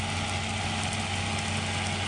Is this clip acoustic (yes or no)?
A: yes